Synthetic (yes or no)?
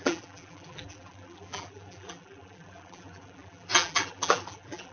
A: yes